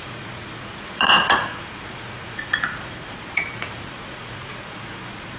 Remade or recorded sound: remade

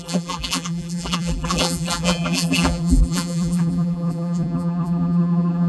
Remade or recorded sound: remade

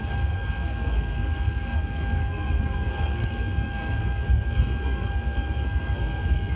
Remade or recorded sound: remade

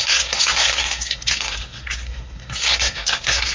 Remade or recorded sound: remade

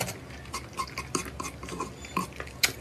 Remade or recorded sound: recorded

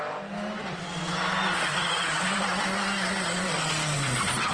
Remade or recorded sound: recorded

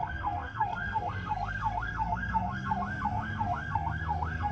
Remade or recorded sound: remade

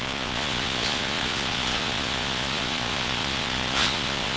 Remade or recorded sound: remade